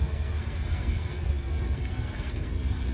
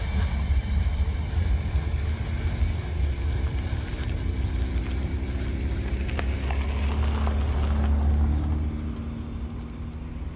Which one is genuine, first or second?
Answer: second